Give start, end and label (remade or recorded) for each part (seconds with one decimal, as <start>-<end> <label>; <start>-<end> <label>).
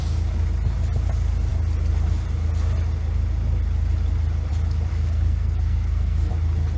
0.0-4.9 recorded; 4.9-6.3 remade; 6.3-6.8 recorded